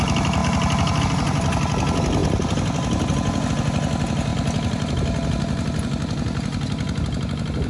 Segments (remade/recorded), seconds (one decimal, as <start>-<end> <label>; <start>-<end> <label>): 0.0-7.7 recorded